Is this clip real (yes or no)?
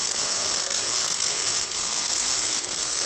no